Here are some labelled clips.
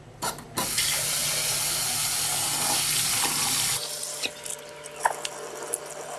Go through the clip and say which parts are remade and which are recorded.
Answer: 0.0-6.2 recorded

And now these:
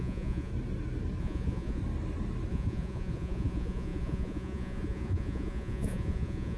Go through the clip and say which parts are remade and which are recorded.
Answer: 0.0-0.5 remade; 0.5-1.2 recorded; 1.2-1.8 remade; 1.8-2.5 recorded; 2.5-6.6 remade

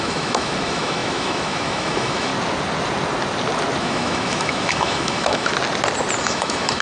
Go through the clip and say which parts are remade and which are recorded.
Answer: 0.0-2.3 remade; 2.3-3.8 recorded; 3.8-5.5 remade; 5.5-6.2 recorded; 6.2-6.8 remade